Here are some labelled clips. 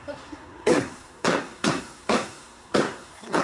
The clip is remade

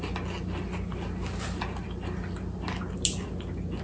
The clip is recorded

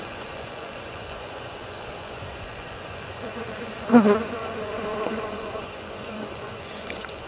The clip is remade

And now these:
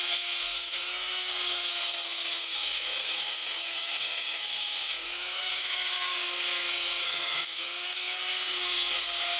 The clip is remade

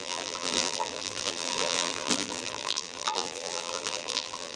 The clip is remade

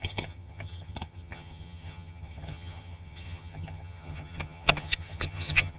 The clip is remade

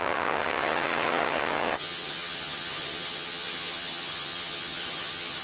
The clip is remade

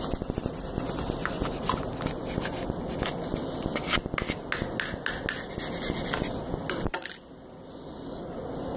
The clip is recorded